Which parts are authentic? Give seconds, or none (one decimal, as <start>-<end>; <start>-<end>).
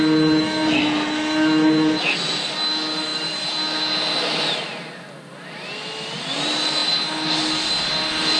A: 0.0-8.4